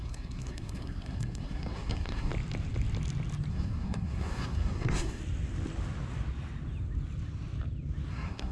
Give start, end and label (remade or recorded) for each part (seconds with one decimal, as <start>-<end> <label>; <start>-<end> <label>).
0.0-2.3 remade; 2.3-3.5 recorded; 3.5-5.2 remade; 5.2-8.1 recorded; 8.1-8.5 remade